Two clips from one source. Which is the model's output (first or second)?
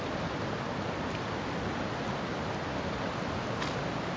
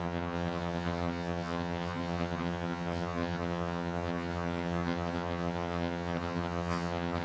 second